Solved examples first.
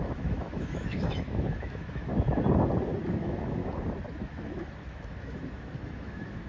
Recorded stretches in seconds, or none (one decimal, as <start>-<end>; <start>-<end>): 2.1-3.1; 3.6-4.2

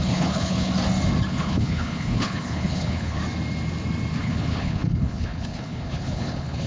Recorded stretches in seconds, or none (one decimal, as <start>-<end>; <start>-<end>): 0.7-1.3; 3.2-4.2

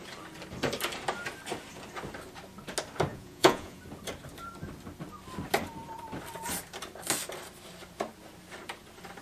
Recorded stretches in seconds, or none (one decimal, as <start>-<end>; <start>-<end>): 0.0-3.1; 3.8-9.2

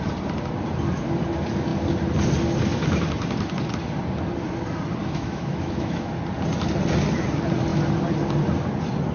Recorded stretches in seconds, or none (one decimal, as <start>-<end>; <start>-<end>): 0.0-5.0; 6.1-9.1

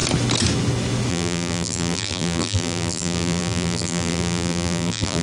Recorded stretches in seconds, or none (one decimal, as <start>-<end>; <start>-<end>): 0.0-1.1

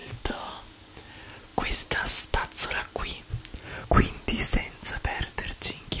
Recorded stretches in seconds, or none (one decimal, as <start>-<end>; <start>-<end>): 1.1-6.0

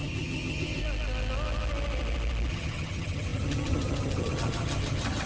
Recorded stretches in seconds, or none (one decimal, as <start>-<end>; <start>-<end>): 0.8-2.5